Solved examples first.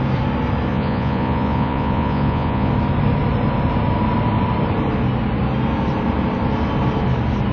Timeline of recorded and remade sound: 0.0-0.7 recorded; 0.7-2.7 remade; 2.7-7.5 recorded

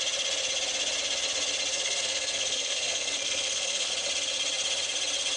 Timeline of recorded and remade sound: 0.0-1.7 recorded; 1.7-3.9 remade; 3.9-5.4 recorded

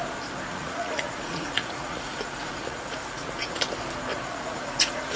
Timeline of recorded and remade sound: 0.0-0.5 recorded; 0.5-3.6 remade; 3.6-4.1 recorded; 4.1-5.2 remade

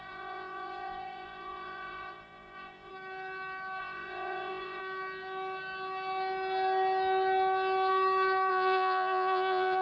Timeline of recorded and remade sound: 0.0-2.9 remade; 2.9-3.8 recorded; 3.8-4.8 remade; 4.8-8.5 recorded; 8.5-9.8 remade